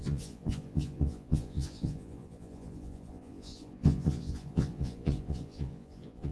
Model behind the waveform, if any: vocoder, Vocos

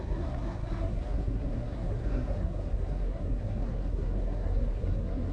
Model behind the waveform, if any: codec, SNAC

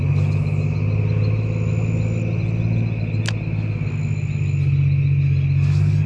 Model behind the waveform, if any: none